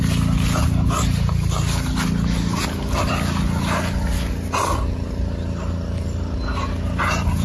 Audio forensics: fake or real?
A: real